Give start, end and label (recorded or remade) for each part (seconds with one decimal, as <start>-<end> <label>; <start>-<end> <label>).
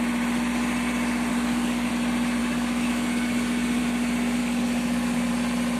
0.0-1.3 recorded; 1.3-1.9 remade; 1.9-2.4 recorded; 2.4-3.8 remade; 3.8-4.4 recorded; 4.4-5.3 remade; 5.3-5.8 recorded